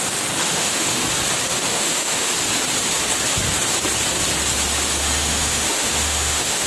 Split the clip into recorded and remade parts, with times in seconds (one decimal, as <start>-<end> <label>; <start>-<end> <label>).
0.0-0.5 recorded; 0.5-1.0 remade; 1.0-1.7 recorded; 1.7-2.3 remade; 2.3-5.0 recorded; 5.0-6.7 remade